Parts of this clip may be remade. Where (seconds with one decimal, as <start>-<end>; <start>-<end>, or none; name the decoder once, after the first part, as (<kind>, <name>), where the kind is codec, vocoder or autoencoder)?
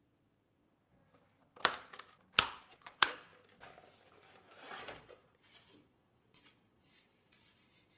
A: 0.0-1.0 (vocoder, Vocos); 2.7-3.3; 4.8-8.0